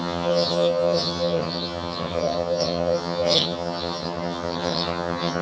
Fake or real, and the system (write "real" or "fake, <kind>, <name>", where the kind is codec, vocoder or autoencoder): fake, vocoder, HiFi-GAN